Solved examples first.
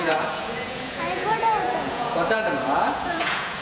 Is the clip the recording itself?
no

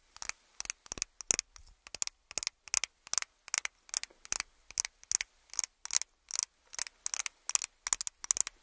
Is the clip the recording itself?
yes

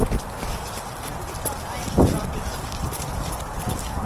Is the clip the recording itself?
yes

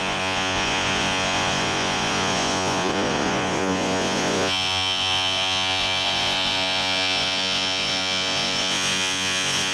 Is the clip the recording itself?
no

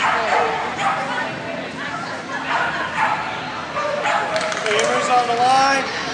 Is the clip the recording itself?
yes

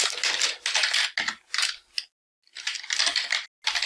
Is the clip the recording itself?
yes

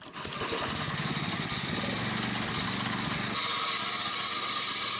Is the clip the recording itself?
yes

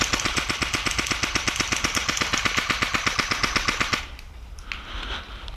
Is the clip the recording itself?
yes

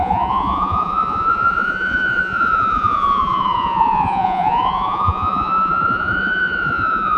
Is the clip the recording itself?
no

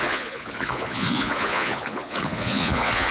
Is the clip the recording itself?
no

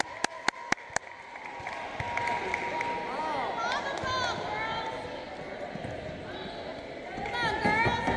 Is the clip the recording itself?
yes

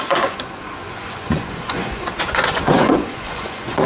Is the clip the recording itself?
no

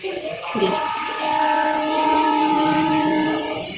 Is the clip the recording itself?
no